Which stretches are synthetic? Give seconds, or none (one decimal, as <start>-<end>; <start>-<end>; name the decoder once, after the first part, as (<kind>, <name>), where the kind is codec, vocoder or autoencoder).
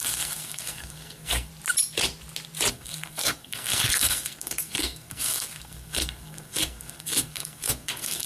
0.0-1.5 (codec, SNAC); 2.7-8.3